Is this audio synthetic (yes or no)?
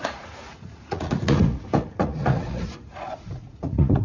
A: yes